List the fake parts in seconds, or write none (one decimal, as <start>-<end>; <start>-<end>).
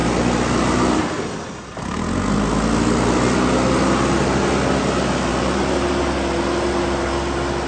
none